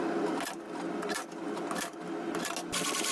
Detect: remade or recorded recorded